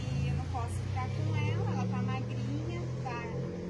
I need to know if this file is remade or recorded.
recorded